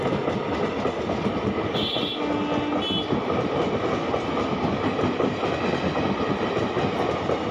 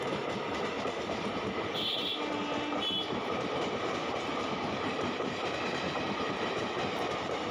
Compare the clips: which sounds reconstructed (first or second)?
second